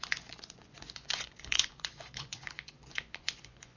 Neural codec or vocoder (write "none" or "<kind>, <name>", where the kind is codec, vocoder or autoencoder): vocoder, Vocos